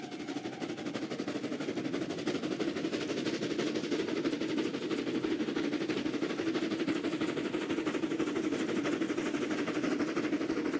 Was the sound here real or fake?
real